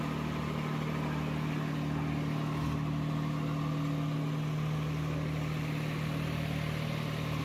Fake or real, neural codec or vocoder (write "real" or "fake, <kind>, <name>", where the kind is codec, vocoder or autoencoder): real